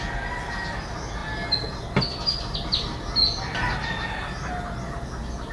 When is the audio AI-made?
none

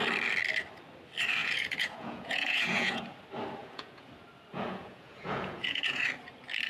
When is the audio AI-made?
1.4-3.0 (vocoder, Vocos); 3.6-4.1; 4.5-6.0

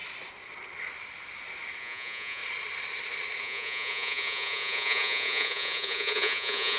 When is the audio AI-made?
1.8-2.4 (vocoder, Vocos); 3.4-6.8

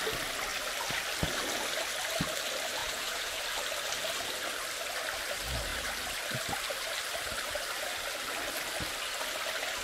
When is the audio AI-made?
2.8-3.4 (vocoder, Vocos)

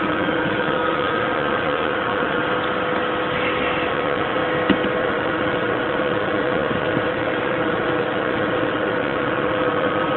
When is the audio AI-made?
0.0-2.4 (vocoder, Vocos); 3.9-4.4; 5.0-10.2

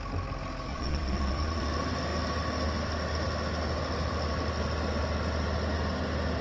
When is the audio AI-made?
0.7-1.6 (vocoder, Vocos)

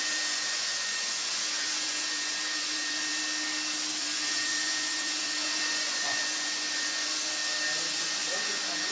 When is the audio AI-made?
0.0-3.1 (vocoder, Vocos); 4.0-7.4; 7.9-8.9